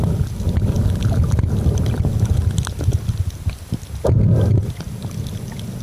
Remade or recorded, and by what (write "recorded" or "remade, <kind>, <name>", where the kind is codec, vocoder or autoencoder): recorded